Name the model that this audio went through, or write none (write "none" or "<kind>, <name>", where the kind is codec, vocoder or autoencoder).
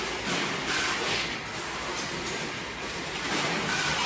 none